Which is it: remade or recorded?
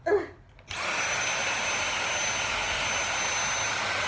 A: recorded